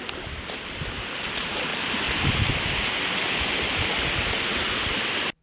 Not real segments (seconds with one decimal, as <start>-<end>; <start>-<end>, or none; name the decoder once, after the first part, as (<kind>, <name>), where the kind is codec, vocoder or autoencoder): 1.7-2.5 (vocoder, BigVGAN v2)